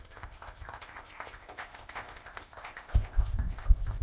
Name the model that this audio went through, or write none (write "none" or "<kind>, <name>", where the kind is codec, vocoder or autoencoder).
codec, ZipCodec